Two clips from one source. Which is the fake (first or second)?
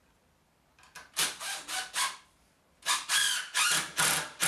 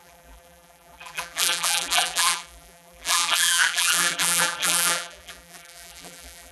second